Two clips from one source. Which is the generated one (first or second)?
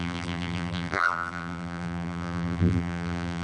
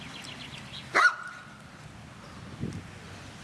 first